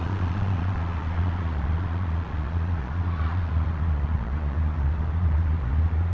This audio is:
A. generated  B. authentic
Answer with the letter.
A